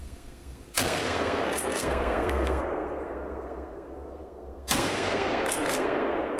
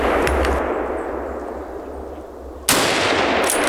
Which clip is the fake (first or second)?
first